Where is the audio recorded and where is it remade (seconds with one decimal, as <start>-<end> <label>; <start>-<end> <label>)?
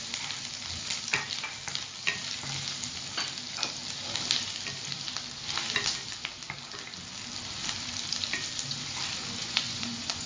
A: 0.0-9.4 recorded; 9.4-10.3 remade